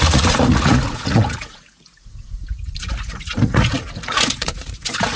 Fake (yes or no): yes